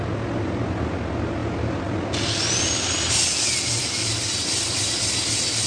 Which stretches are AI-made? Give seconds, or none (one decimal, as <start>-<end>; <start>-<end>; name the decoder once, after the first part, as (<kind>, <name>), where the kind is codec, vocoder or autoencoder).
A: 1.4-4.8 (vocoder, BigVGAN v2)